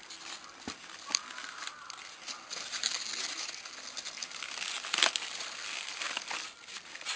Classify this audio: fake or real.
real